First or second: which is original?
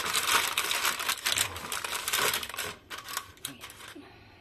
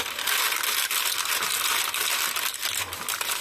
second